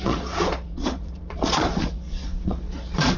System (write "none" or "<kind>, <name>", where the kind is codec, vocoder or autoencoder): vocoder, Vocos